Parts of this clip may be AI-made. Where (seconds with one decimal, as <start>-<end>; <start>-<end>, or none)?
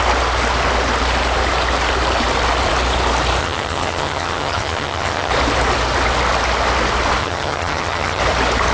3.4-5.3; 7.2-8.2